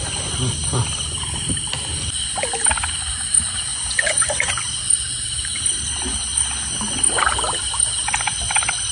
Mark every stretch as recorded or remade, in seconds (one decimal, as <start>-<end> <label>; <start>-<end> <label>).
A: 0.0-3.7 recorded; 3.7-4.5 remade; 4.5-8.9 recorded